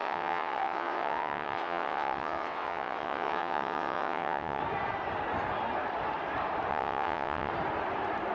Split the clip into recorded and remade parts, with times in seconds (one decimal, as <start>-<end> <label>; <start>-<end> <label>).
0.0-4.6 remade; 4.6-6.7 recorded; 6.7-7.5 remade; 7.5-8.3 recorded